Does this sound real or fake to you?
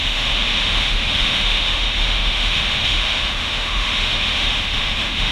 fake